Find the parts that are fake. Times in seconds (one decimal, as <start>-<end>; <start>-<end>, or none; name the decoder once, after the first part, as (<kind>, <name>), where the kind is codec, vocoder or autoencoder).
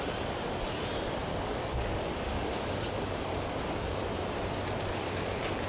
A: 1.3-4.2 (codec, DAC)